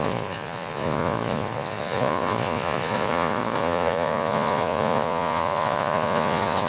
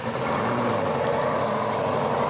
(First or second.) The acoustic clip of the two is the second